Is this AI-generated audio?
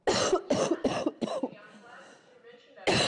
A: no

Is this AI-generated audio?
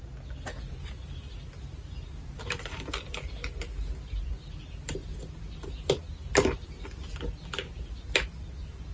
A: no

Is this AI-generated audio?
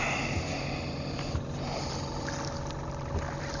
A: no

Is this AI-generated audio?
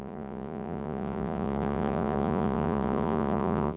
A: yes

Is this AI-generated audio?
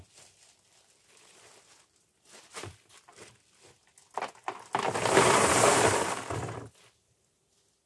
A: no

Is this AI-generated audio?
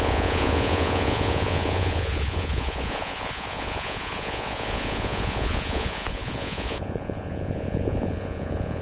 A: yes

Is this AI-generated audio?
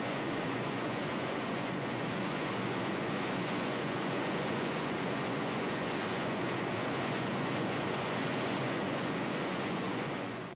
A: yes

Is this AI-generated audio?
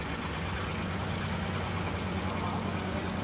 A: yes